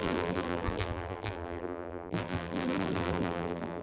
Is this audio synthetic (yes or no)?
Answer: yes